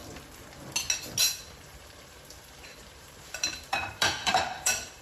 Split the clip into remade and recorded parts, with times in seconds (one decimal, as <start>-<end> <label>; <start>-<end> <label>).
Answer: 0.0-1.2 recorded; 1.2-5.0 remade

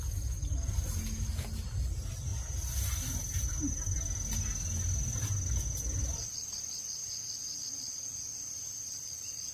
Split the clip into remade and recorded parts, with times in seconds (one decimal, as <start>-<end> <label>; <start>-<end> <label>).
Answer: 0.0-9.5 recorded

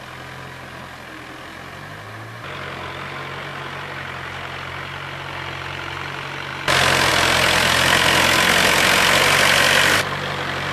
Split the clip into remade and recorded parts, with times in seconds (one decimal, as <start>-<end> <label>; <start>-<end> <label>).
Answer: 0.0-10.7 recorded